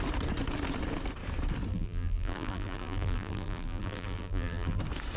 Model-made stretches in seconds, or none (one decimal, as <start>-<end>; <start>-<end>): 1.7-4.8